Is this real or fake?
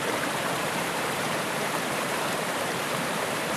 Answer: fake